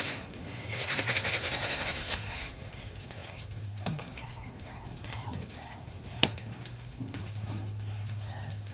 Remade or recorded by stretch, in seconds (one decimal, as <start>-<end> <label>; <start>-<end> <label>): 0.0-8.7 remade